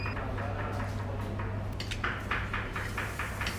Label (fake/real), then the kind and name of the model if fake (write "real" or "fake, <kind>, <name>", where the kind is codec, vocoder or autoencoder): real